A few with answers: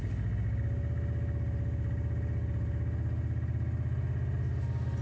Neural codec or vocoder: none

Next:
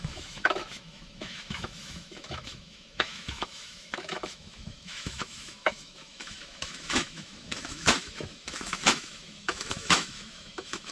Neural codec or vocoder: autoencoder, DAC-VAE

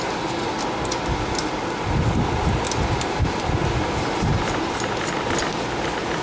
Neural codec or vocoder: none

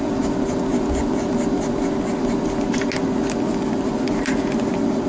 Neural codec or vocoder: none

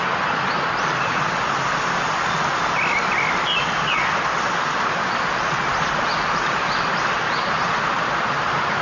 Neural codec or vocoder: none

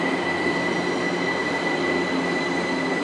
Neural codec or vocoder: none